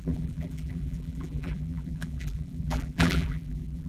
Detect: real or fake fake